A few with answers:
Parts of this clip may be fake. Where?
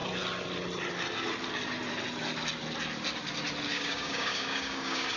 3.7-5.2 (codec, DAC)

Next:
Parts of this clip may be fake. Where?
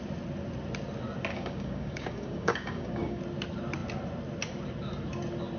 1.3-3.2 (codec, DAC)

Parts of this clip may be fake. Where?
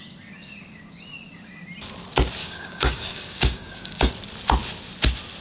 2.4-4.1 (codec, DAC)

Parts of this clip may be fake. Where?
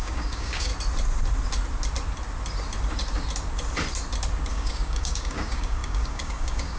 0.0-0.7 (codec, DAC); 4.5-6.8